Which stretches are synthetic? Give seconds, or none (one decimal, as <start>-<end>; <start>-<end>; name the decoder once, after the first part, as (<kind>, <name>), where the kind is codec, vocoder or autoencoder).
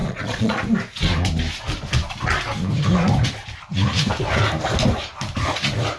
0.0-0.6 (vocoder, Vocos)